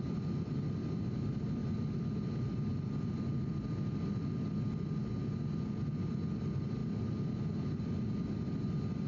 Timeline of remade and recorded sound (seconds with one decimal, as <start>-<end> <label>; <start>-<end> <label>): 0.0-9.1 recorded